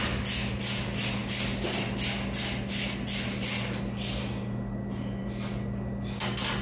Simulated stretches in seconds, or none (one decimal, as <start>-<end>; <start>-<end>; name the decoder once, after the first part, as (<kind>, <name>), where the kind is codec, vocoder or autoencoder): none